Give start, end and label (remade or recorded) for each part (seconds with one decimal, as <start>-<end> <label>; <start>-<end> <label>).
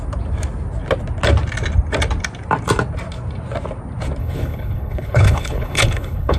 0.0-4.2 recorded; 4.2-6.4 remade